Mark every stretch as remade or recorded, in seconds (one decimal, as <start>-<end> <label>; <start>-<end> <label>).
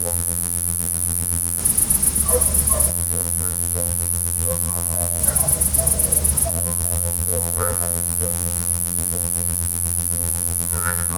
0.0-1.6 remade; 1.6-2.9 recorded; 2.9-5.2 remade; 5.2-6.5 recorded; 6.5-11.2 remade